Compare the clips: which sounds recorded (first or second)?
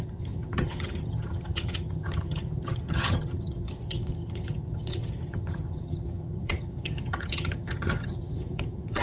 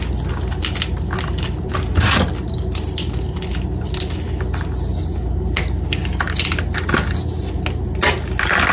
second